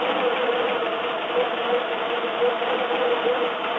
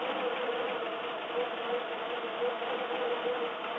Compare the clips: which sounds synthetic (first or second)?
first